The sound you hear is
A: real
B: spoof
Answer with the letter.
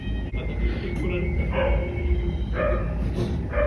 A